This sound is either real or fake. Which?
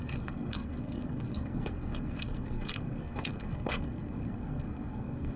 fake